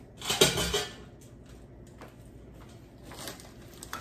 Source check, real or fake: real